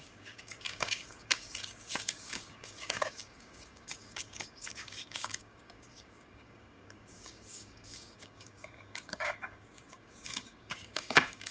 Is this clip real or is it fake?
fake